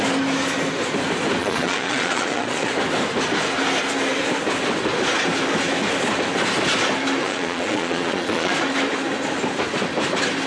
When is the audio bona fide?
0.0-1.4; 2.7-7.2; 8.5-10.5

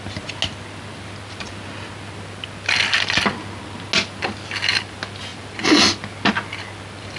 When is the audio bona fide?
0.0-7.2

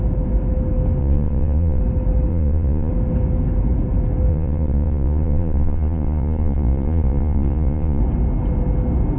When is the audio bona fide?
0.0-1.0; 1.8-2.3; 2.9-4.3; 8.0-9.2

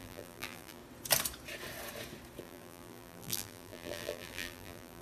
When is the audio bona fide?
0.8-2.4

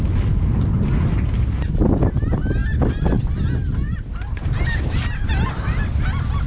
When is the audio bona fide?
0.0-6.5

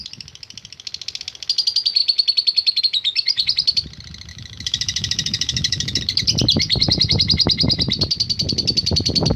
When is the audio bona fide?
0.0-4.3; 6.0-9.4

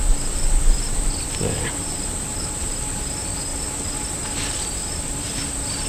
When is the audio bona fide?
0.0-1.8; 2.8-4.8; 5.4-5.9